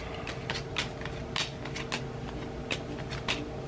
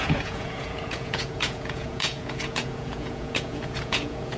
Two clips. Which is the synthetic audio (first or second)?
second